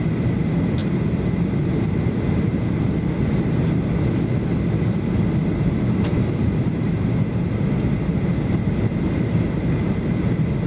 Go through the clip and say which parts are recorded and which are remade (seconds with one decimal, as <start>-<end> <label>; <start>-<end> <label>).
0.0-0.8 recorded; 0.8-2.8 remade; 2.8-6.1 recorded; 6.1-10.0 remade; 10.0-10.7 recorded